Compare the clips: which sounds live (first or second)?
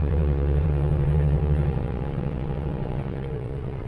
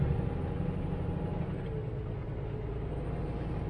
second